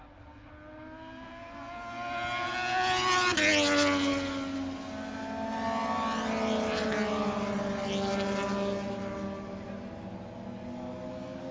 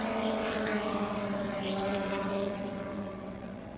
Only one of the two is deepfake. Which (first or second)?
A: second